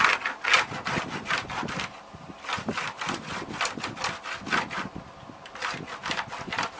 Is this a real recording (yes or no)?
yes